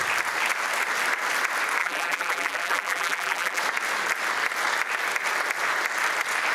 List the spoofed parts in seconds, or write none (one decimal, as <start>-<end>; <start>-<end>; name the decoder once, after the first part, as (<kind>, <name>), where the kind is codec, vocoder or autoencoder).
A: 1.8-3.6 (vocoder, BigVGAN v2)